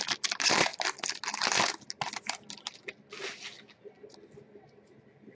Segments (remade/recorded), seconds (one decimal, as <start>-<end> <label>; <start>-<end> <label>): 0.0-5.3 recorded